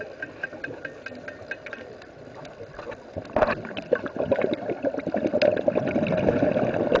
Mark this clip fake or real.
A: real